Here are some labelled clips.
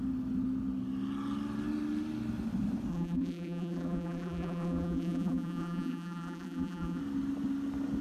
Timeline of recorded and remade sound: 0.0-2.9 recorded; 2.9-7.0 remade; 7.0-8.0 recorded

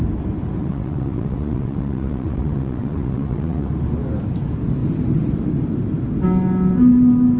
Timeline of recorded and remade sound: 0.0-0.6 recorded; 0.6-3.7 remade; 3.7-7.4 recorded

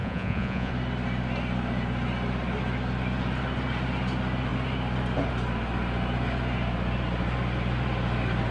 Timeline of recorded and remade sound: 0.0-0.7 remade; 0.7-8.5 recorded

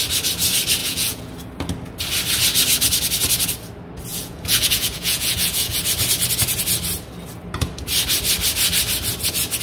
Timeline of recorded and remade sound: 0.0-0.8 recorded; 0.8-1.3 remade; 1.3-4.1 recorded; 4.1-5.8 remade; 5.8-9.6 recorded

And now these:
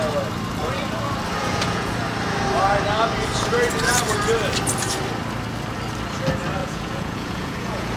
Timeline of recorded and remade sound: 0.0-1.4 recorded; 1.4-1.9 remade; 1.9-6.6 recorded; 6.6-8.0 remade